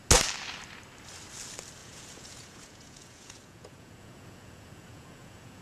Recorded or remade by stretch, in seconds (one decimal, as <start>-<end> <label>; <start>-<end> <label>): 0.0-1.8 recorded; 1.8-5.6 remade